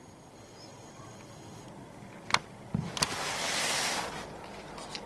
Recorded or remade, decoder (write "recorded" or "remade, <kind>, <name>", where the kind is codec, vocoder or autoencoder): recorded